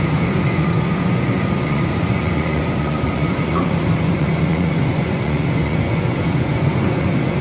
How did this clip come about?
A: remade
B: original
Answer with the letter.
A